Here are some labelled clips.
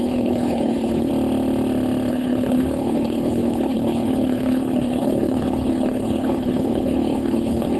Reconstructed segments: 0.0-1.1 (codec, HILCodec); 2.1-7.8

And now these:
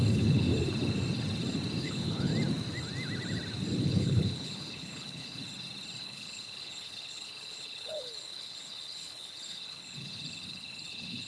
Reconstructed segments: 0.0-0.5 (codec, HILCodec); 1.8-2.3; 3.8-5.4; 6.0-11.3

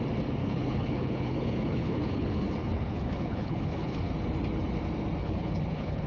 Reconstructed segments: 0.4-4.1 (codec, HILCodec); 5.2-6.1

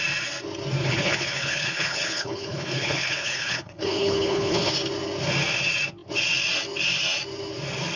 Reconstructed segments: 0.8-4.7 (codec, HILCodec)

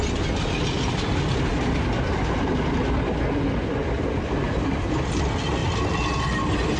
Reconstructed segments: none

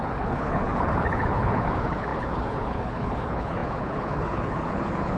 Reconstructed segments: 0.0-5.2 (codec, HILCodec)

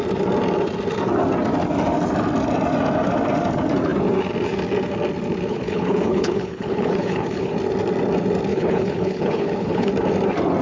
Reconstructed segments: 5.5-7.5 (codec, HILCodec); 8.5-9.9